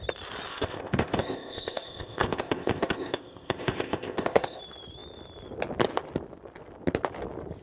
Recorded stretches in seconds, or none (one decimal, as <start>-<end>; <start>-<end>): 0.0-0.5; 4.6-7.6